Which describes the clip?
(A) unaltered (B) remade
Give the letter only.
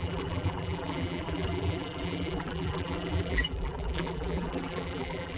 B